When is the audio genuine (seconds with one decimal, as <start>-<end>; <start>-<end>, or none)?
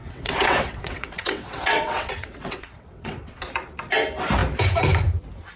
3.4-5.6